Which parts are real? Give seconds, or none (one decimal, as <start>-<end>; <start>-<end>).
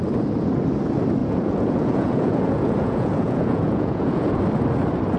0.0-1.2; 4.3-5.2